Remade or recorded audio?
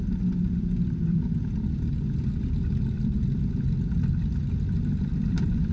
recorded